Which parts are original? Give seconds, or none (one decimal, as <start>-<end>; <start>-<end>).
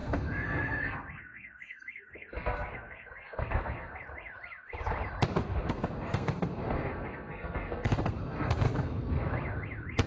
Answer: 4.0-5.4; 9.3-10.1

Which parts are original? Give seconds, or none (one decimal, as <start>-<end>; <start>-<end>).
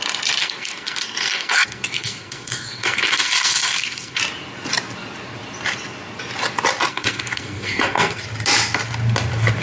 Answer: 0.0-0.4; 4.2-6.9; 8.2-9.6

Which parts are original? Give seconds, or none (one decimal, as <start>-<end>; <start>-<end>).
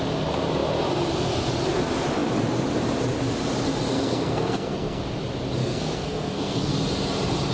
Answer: 0.0-3.9; 5.0-5.6; 6.7-7.5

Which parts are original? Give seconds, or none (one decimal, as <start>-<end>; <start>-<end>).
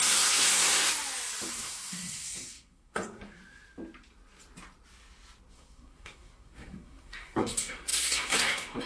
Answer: 0.9-1.5; 3.4-5.5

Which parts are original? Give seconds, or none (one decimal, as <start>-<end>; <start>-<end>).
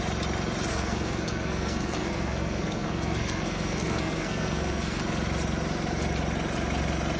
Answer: 0.0-0.7; 5.0-7.2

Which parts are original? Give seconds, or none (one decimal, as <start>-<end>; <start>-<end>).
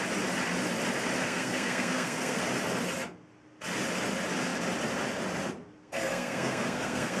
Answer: 0.0-1.2; 2.4-5.8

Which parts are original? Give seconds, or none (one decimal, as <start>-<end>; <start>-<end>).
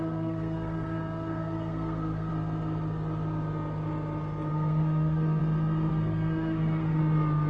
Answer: 2.3-4.5; 5.4-5.9; 7.0-7.5